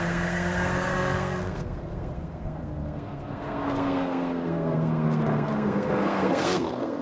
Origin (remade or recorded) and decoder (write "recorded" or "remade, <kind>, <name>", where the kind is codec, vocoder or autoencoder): remade, codec, SNAC